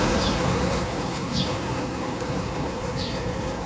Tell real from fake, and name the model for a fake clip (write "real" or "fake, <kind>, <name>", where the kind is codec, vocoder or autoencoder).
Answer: fake, codec, SNAC